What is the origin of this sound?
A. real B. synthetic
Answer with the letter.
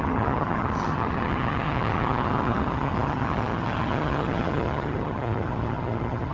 B